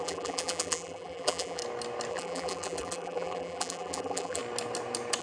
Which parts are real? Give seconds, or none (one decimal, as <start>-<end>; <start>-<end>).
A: 1.6-2.1; 4.4-5.2